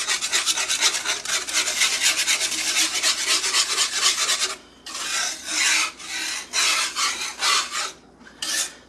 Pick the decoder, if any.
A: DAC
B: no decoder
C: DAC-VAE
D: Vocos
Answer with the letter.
B